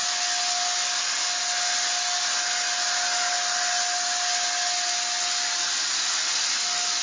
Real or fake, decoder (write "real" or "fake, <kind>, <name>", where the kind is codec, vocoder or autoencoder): real